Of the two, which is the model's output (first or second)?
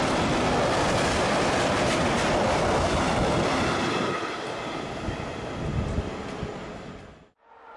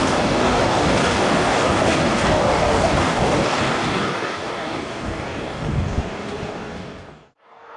second